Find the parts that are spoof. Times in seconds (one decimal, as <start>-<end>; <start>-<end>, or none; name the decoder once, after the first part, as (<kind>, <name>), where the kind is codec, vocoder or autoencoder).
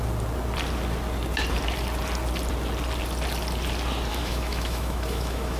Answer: 4.1-5.6 (autoencoder, DAC-VAE)